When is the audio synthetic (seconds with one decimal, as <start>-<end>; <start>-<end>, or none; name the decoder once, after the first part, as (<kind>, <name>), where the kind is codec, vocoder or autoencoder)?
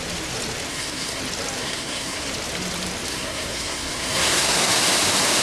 0.7-1.2 (codec, SNAC); 1.6-2.3; 3.1-4.7